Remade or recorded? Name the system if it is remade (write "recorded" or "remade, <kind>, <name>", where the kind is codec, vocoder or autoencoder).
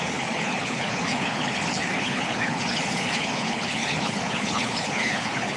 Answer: remade, codec, HILCodec